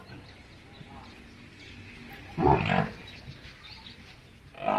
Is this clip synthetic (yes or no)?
no